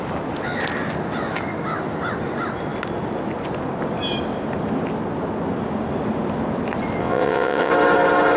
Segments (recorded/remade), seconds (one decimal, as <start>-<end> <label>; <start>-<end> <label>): 0.0-7.0 recorded; 7.0-7.7 remade; 7.7-8.4 recorded